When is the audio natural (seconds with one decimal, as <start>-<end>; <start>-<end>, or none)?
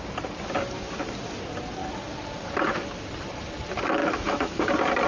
0.0-4.0; 4.6-5.1